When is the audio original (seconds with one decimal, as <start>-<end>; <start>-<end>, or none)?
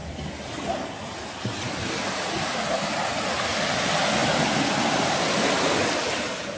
0.0-6.6